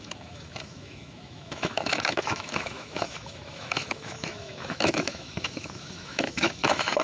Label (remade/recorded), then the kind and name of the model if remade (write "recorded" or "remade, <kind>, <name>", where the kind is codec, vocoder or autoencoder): remade, autoencoder, DAC-VAE